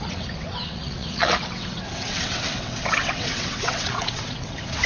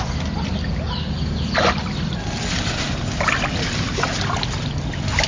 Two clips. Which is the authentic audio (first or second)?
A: second